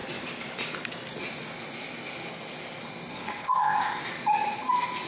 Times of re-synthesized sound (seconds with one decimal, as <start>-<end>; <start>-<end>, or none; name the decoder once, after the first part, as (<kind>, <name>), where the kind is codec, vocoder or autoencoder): 3.1-4.0 (codec, ZipCodec)